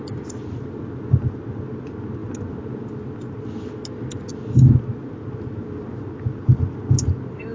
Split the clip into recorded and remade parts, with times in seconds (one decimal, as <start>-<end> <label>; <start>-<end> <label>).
0.0-7.5 recorded